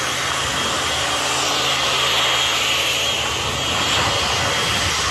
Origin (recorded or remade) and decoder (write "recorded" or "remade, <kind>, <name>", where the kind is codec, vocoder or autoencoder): recorded